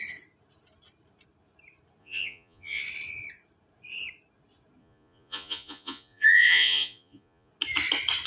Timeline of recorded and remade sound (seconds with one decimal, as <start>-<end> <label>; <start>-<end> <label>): 0.0-2.0 recorded; 2.0-2.8 remade; 2.8-4.8 recorded; 4.8-7.5 remade; 7.5-8.3 recorded